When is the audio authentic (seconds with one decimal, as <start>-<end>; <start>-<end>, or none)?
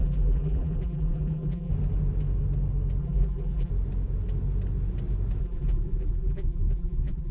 1.7-3.0; 3.7-5.4